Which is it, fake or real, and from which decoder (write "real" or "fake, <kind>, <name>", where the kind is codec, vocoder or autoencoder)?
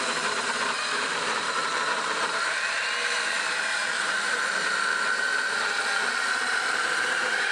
fake, vocoder, BigVGAN v2